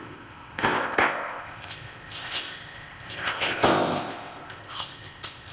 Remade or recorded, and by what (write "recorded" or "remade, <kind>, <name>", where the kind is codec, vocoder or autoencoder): remade, codec, ZipCodec